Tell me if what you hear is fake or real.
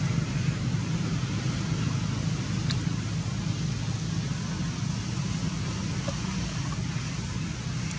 real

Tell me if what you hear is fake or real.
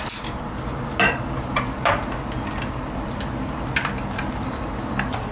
real